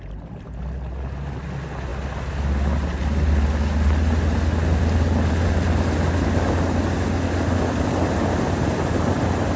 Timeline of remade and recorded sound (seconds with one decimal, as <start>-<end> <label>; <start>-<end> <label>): 0.0-9.6 recorded